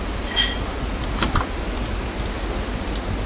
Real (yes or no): yes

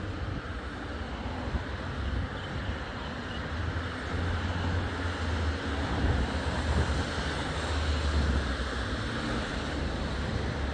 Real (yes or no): yes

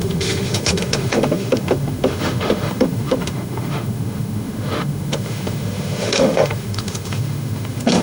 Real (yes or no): no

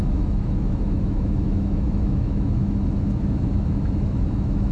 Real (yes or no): no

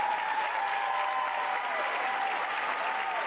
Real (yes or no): yes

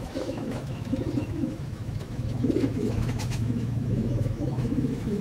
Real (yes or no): no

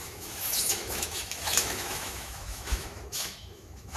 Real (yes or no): no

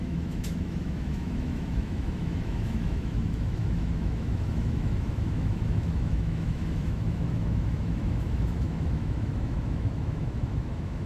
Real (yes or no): no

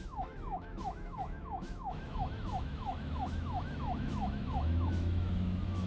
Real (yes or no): no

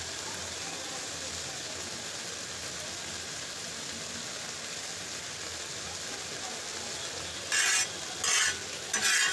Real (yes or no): yes